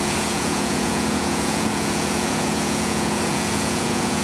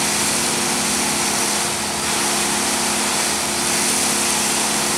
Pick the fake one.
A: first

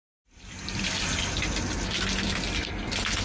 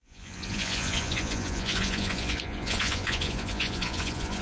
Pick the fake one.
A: second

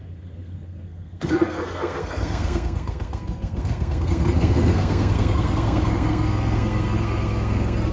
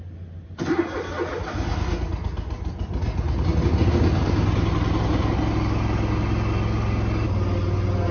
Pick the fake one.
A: first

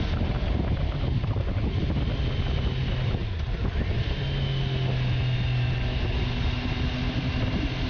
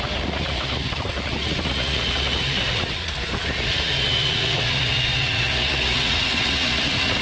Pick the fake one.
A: second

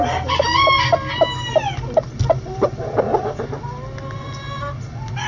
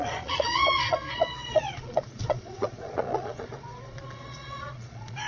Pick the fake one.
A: second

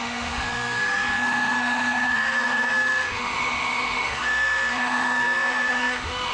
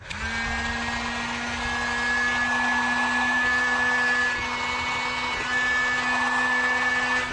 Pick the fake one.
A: first